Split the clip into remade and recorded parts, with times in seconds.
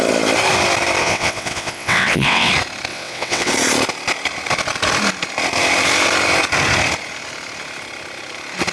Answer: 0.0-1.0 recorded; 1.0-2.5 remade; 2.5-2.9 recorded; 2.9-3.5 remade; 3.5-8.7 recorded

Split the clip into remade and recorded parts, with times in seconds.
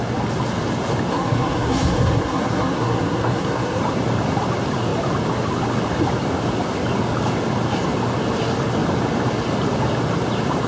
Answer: 0.0-1.1 recorded; 1.1-3.8 remade; 3.8-10.7 recorded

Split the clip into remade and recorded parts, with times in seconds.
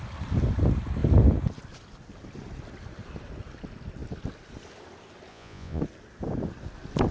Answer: 0.0-5.3 recorded; 5.3-5.8 remade; 5.8-7.1 recorded